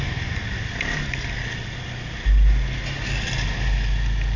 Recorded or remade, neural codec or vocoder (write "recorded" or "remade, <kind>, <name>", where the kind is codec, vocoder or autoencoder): recorded